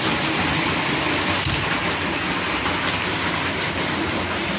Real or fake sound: real